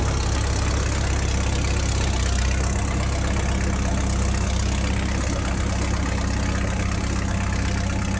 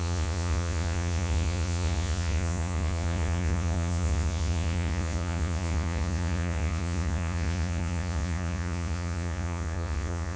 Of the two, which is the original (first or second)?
first